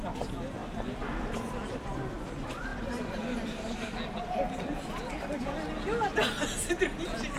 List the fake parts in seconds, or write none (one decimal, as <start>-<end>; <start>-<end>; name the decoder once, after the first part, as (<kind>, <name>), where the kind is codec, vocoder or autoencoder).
none